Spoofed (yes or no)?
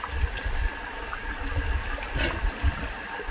no